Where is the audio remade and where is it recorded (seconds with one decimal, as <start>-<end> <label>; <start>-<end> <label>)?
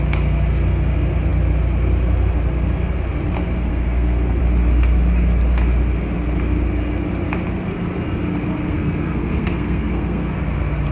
0.0-3.7 recorded; 3.7-4.4 remade; 4.4-8.5 recorded; 8.5-10.3 remade; 10.3-10.9 recorded